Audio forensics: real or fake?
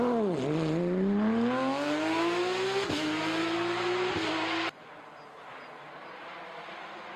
real